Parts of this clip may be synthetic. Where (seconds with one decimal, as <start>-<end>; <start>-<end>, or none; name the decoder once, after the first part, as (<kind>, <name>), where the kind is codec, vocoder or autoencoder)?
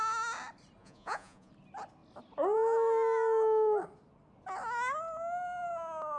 0.8-1.5 (vocoder, Vocos)